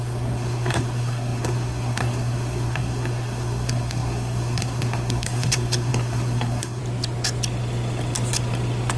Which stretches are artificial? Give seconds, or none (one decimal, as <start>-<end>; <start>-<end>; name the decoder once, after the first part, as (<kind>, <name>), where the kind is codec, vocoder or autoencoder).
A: 0.0-6.8 (codec, SNAC)